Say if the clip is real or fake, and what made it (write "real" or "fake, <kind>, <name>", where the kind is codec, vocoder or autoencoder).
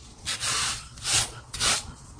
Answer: fake, vocoder, Vocos